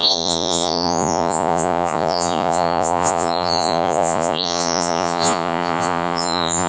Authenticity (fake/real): fake